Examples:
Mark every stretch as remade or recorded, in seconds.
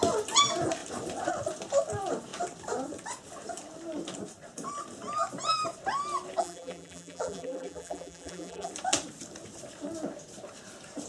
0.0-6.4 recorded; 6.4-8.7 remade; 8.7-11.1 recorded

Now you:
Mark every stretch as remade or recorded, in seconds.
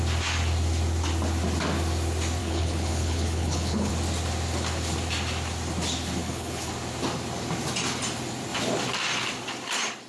0.0-2.4 recorded; 2.4-3.9 remade; 3.9-6.2 recorded; 6.2-6.7 remade; 6.7-10.1 recorded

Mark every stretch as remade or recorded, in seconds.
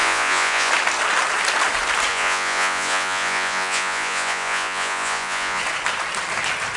0.0-0.7 remade; 0.7-2.1 recorded; 2.1-5.6 remade; 5.6-6.8 recorded